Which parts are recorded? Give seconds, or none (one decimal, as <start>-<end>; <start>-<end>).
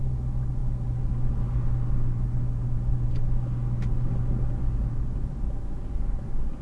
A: 0.0-6.6